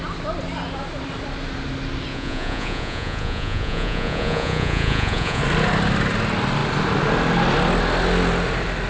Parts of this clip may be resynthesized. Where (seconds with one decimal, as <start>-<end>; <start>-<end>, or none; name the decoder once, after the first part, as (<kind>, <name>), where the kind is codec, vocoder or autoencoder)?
2.1-5.4 (vocoder, Vocos)